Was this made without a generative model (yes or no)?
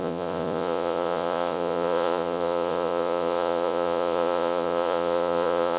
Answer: no